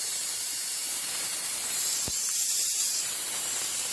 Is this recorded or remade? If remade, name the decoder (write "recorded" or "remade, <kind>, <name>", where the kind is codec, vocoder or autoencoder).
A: remade, vocoder, BigVGAN v2